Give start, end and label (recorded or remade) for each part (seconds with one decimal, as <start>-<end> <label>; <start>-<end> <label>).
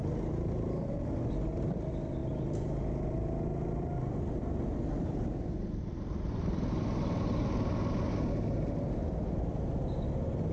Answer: 0.0-0.9 remade; 0.9-10.5 recorded